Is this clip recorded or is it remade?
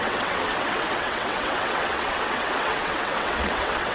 remade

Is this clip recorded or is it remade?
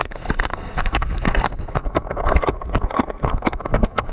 remade